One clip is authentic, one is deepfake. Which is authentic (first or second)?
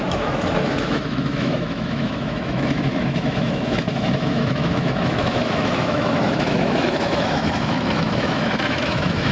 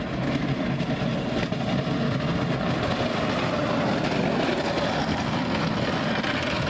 second